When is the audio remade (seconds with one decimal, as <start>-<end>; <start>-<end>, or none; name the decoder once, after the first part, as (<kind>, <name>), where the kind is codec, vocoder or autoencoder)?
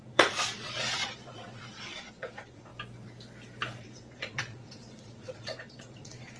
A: 0.0-2.7 (vocoder, Vocos); 3.8-6.4